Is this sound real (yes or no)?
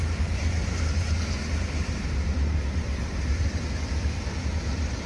no